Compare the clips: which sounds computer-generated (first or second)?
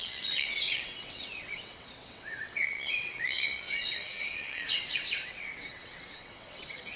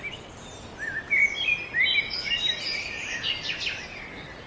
first